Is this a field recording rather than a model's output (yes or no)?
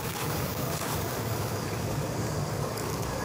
no